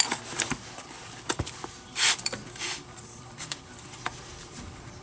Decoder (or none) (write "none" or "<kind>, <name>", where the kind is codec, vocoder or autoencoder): vocoder, BigVGAN v2